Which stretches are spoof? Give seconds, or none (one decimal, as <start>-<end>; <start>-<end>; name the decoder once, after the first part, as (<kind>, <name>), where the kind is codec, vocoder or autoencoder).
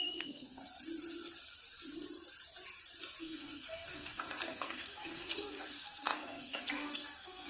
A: 0.0-0.6 (codec, SNAC); 3.2-7.5